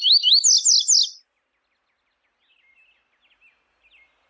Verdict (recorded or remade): recorded